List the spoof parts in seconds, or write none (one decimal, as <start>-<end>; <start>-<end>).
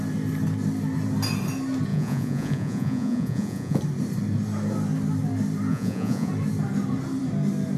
1.9-3.8; 5.7-6.3